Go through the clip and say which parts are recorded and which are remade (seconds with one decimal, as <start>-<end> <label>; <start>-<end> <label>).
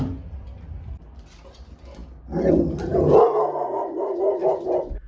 0.0-5.1 recorded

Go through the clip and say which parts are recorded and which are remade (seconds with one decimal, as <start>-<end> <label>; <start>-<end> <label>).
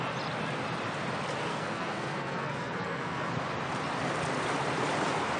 0.0-1.5 recorded; 1.5-3.3 remade; 3.3-5.4 recorded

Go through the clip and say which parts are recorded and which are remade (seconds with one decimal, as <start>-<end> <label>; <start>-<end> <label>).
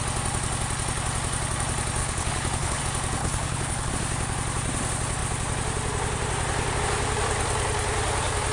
0.0-2.0 recorded; 2.0-2.8 remade; 2.8-3.2 recorded; 3.2-3.9 remade; 3.9-8.5 recorded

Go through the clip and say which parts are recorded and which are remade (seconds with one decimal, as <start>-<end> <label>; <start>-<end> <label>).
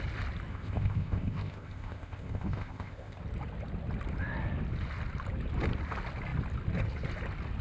0.0-0.5 recorded; 0.5-3.2 remade; 3.2-7.6 recorded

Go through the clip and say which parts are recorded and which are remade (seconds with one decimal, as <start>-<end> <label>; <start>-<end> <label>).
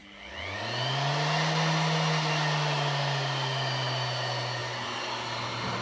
0.0-5.8 recorded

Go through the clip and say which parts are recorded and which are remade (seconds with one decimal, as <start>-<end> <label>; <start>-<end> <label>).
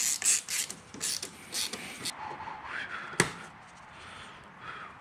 0.0-5.0 recorded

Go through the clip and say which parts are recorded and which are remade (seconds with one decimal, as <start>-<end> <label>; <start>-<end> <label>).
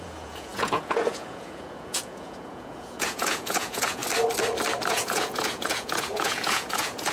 0.0-4.0 remade; 4.0-4.9 recorded; 4.9-7.1 remade